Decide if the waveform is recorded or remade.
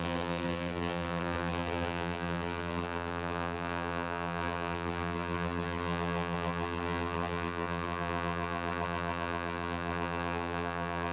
remade